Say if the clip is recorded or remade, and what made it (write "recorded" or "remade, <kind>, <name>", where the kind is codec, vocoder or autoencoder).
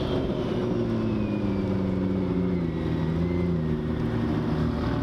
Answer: recorded